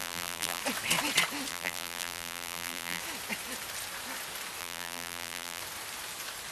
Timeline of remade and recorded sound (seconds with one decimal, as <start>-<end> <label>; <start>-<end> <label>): 0.0-0.6 remade; 0.6-1.5 recorded; 1.5-3.0 remade; 3.0-4.6 recorded; 4.6-5.6 remade; 5.6-6.5 recorded